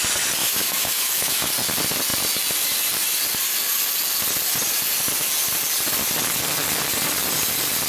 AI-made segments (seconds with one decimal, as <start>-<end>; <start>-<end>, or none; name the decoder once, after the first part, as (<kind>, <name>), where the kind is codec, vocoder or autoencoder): 0.4-1.5 (autoencoder, DAC-VAE)